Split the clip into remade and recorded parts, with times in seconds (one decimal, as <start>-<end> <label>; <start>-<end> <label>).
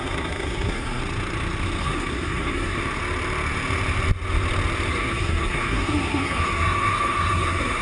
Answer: 0.0-1.0 remade; 1.0-1.8 recorded; 1.8-2.8 remade; 2.8-4.9 recorded; 4.9-7.8 remade